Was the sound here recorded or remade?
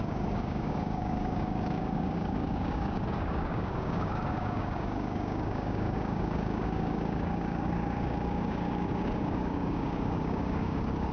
remade